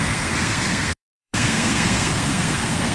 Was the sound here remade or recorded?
remade